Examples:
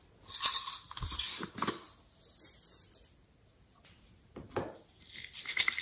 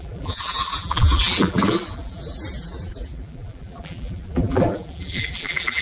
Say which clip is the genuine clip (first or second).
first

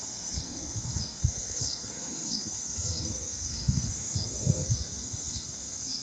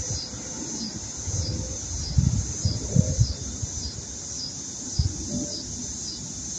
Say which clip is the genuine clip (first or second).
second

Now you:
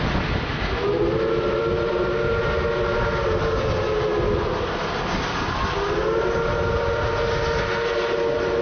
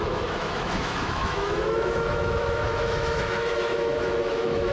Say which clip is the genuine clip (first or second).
first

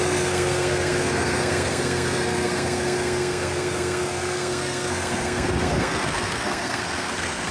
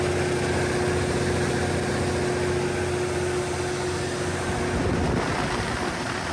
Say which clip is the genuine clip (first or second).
second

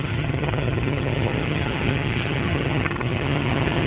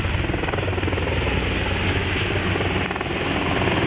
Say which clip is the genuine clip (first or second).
second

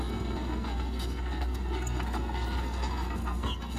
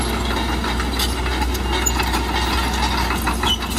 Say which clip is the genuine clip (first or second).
second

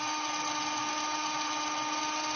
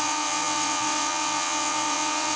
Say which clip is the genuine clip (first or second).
first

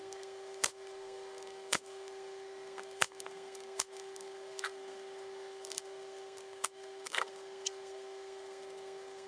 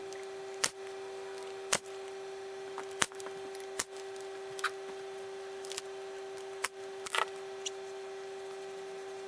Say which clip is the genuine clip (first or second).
second